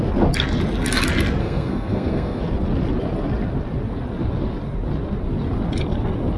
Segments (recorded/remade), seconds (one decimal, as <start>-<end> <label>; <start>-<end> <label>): 0.0-1.4 recorded; 1.4-2.4 remade; 2.4-6.4 recorded